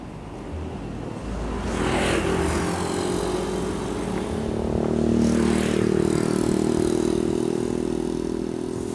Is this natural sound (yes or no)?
yes